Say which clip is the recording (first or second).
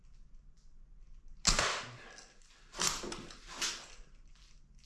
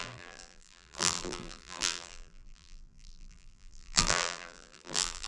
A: first